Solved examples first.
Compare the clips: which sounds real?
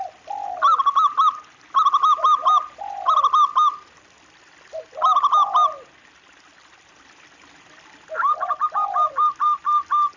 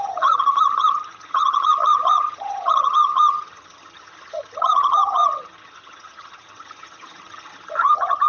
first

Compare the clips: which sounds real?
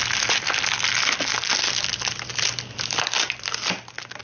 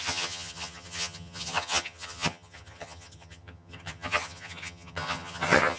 first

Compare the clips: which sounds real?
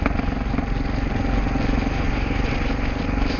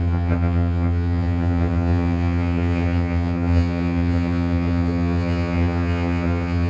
first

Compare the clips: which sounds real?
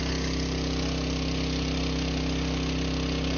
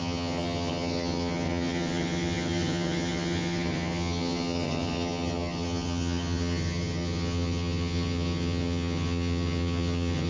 first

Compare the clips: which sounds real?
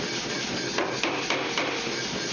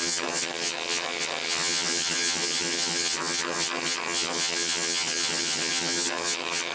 first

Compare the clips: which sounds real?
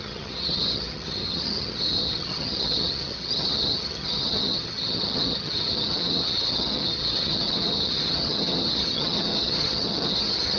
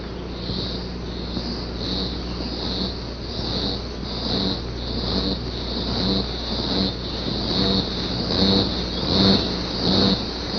second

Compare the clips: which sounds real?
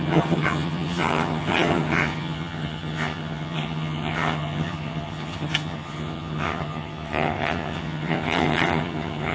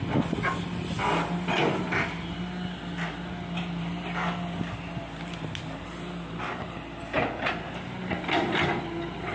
second